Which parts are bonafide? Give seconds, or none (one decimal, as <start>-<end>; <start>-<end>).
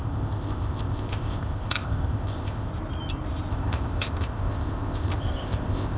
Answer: 2.7-3.5